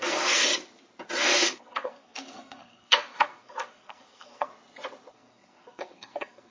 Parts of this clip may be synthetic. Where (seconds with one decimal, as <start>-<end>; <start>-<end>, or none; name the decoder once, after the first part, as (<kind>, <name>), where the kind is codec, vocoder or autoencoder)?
0.0-0.5 (codec, SNAC); 1.2-4.5; 5.1-6.5